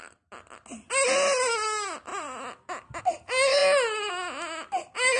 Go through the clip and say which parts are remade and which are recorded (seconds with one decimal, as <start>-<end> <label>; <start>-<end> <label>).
0.0-2.1 recorded; 2.1-3.0 remade; 3.0-5.2 recorded

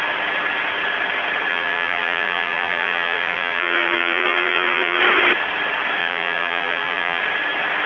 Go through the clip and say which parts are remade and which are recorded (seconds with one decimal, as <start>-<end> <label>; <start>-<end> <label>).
0.0-1.5 recorded; 1.5-5.0 remade; 5.0-6.0 recorded; 6.0-7.2 remade; 7.2-7.9 recorded

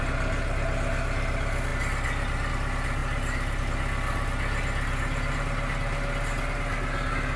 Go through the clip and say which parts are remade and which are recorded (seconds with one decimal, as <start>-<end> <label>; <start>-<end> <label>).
0.0-3.0 recorded; 3.0-3.6 remade; 3.6-7.4 recorded

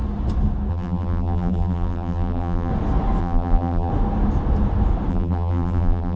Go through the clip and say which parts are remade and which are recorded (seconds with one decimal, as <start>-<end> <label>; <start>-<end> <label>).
0.0-0.7 recorded; 0.7-2.7 remade; 2.7-3.2 recorded; 3.2-3.9 remade; 3.9-5.1 recorded; 5.1-6.2 remade